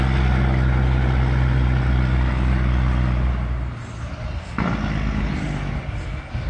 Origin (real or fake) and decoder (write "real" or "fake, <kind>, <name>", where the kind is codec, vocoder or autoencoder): real